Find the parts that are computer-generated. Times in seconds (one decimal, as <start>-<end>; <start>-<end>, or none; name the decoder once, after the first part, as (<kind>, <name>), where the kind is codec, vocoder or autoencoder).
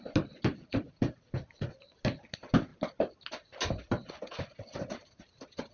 none